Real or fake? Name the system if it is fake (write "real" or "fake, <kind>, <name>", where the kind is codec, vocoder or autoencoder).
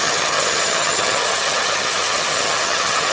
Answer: fake, vocoder, HiFi-GAN